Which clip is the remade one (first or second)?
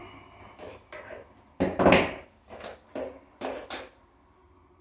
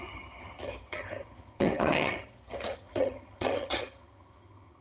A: second